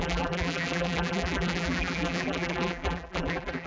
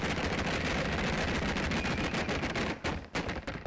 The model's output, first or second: first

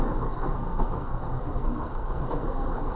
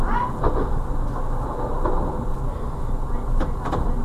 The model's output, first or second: first